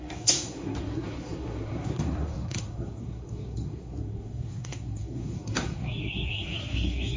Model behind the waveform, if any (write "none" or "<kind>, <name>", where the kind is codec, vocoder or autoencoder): codec, SNAC